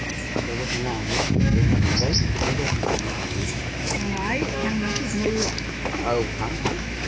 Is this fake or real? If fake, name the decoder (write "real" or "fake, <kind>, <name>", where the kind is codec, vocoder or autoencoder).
fake, autoencoder, DAC-VAE